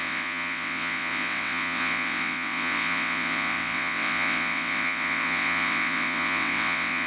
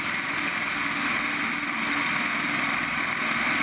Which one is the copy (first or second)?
first